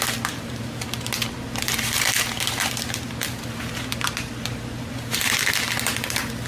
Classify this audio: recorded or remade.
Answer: recorded